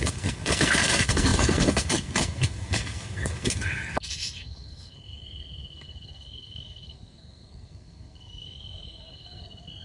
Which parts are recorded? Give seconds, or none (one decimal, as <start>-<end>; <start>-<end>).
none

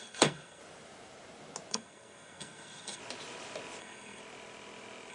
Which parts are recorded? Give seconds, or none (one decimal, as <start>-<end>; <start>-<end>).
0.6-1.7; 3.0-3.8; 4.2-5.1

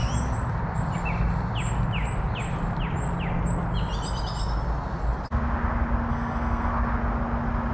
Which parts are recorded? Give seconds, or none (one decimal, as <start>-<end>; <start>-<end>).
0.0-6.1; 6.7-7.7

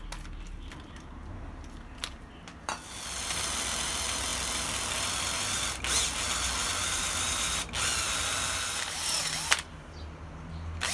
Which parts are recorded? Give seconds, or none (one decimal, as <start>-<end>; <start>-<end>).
0.0-10.9

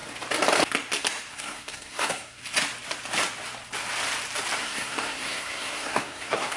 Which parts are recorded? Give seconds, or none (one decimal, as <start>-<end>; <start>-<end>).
0.0-1.3; 2.4-4.6